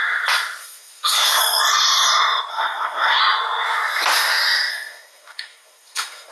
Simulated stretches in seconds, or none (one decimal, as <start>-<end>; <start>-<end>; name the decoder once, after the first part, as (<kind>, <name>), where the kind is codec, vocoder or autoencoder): 0.6-1.4 (codec, SNAC); 2.5-3.2; 4.7-6.3